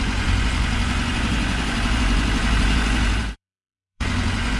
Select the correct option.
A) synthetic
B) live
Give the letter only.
A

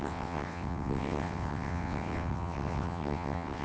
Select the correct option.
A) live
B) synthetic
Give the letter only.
B